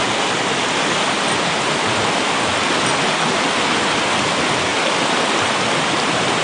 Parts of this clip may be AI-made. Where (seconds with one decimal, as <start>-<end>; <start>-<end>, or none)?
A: none